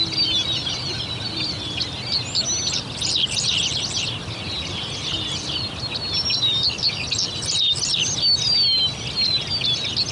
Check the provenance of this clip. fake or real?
real